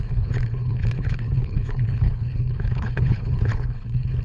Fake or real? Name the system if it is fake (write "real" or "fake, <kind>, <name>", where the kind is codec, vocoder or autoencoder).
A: fake, codec, HILCodec